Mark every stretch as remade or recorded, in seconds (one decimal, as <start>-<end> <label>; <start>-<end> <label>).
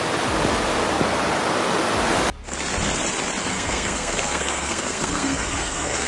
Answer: 0.0-3.5 recorded; 3.5-6.1 remade